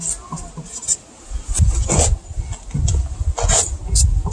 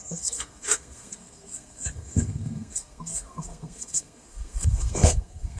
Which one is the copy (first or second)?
second